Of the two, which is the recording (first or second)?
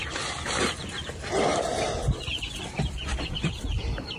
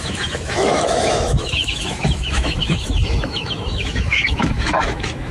first